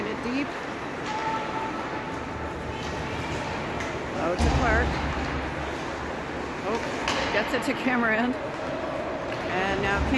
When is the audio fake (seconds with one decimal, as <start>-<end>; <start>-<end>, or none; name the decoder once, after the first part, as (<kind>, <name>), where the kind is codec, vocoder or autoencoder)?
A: none